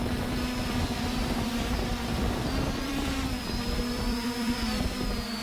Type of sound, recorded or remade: remade